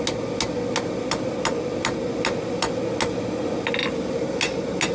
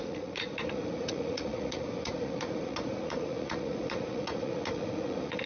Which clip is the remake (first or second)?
second